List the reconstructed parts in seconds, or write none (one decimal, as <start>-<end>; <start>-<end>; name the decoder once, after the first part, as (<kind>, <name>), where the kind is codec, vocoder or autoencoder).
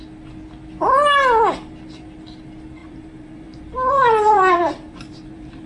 2.8-5.7 (vocoder, BigVGAN v2)